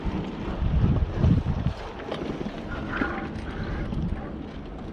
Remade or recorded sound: recorded